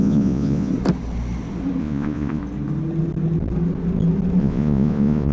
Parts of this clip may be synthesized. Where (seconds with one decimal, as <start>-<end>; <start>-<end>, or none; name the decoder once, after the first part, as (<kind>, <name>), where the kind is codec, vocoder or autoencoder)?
0.0-0.7 (vocoder, Vocos); 1.8-2.4; 4.4-5.3